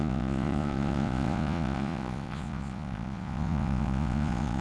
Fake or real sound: fake